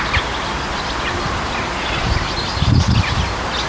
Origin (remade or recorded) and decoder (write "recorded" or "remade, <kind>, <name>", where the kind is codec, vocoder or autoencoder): recorded